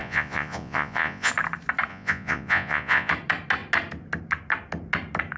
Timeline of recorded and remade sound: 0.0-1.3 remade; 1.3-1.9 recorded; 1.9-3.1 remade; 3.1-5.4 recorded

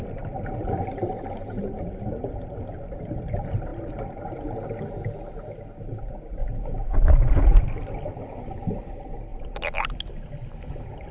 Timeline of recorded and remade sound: 0.0-6.4 recorded; 6.4-7.6 remade; 7.6-11.1 recorded

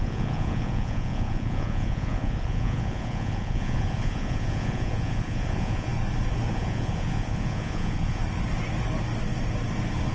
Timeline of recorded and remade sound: 0.0-5.9 remade; 5.9-6.5 recorded; 6.5-8.2 remade; 8.2-10.1 recorded

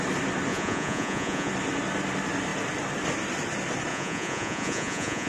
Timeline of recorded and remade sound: 0.0-0.5 recorded; 0.5-1.5 remade; 1.5-3.9 recorded; 3.9-5.3 remade